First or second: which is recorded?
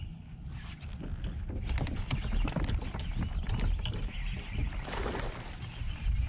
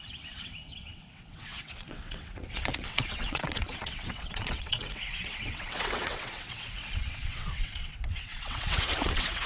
first